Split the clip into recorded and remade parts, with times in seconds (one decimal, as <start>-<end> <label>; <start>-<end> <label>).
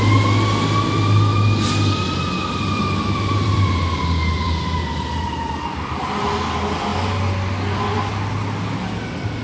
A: 0.0-2.4 recorded; 2.4-4.9 remade; 4.9-9.4 recorded